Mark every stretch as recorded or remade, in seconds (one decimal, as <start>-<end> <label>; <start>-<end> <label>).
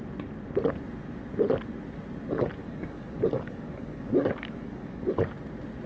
0.0-2.6 recorded; 2.6-5.2 remade; 5.2-5.9 recorded